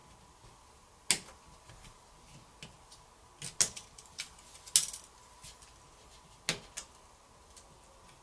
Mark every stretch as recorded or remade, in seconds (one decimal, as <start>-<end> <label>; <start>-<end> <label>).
0.0-8.2 recorded